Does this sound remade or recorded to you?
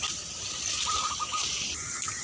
recorded